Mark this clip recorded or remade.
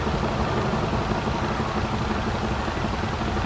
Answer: recorded